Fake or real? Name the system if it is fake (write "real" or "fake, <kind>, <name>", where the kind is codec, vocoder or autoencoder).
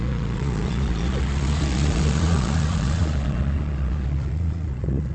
fake, vocoder, Vocos